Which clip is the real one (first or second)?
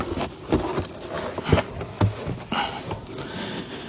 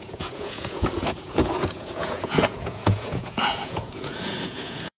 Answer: first